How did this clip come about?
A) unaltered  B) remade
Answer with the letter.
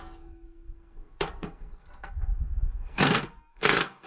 B